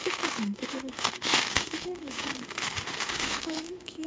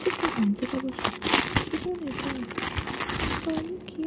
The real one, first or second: second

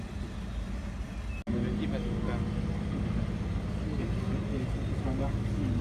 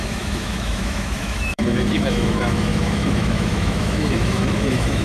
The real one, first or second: first